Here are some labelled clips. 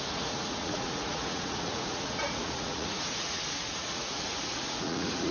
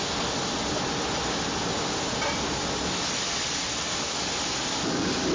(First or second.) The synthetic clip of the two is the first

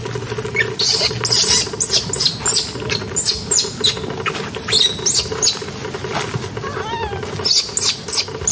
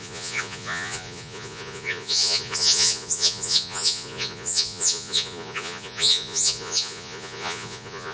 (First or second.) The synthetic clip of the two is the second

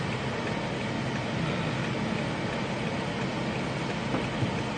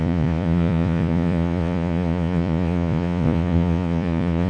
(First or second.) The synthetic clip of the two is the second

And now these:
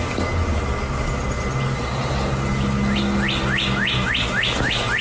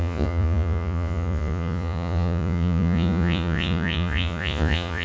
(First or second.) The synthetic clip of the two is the second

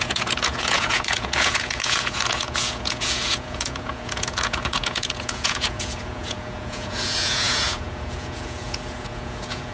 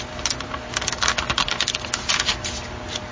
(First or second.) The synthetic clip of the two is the first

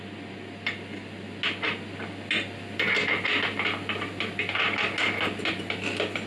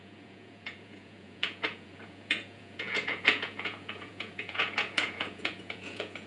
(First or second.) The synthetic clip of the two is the second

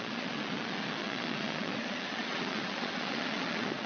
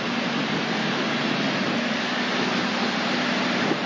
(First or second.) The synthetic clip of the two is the first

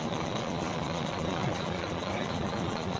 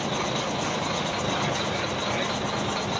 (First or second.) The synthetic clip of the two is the first